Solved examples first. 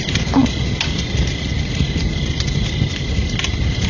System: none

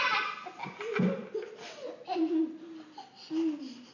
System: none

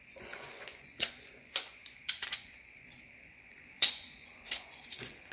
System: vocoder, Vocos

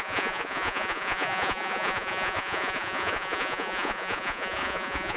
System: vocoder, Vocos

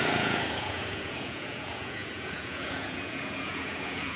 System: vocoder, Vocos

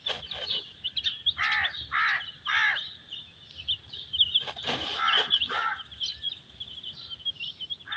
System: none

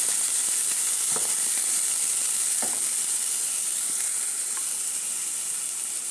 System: none